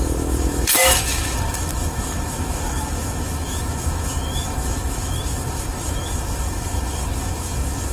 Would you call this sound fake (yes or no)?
yes